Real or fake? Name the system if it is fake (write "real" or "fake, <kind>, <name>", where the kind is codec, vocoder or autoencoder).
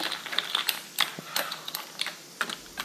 real